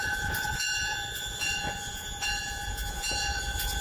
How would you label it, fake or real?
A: fake